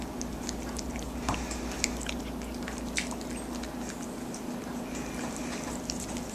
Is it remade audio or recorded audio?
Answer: recorded